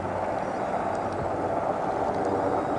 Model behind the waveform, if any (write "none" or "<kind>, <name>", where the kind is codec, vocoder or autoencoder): none